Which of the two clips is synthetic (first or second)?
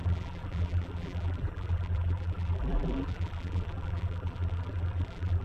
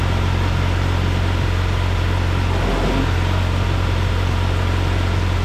first